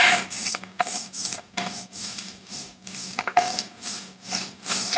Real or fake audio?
fake